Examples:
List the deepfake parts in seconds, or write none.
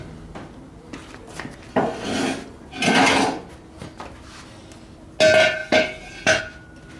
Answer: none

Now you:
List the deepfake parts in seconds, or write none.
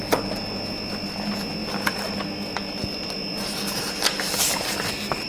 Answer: none